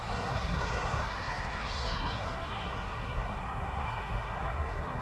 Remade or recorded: remade